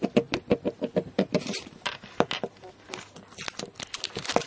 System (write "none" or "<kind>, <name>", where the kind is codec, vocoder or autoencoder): none